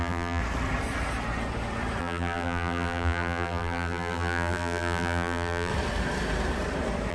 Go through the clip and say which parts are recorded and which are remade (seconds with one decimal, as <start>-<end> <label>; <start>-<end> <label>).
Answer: 0.0-0.4 remade; 0.4-2.0 recorded; 2.0-5.7 remade; 5.7-7.1 recorded